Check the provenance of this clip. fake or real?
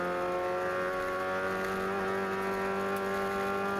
real